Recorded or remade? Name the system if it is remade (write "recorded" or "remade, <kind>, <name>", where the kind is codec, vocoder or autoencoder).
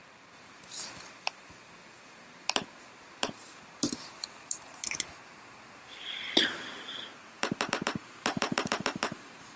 remade, vocoder, BigVGAN v2